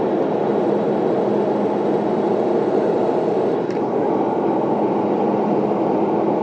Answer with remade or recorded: recorded